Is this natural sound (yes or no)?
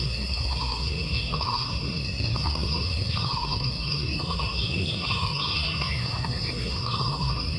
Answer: no